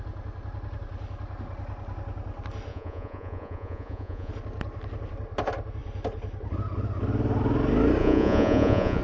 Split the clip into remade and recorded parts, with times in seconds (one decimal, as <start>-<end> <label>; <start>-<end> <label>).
0.0-2.7 recorded; 2.7-4.3 remade; 4.3-8.0 recorded; 8.0-9.0 remade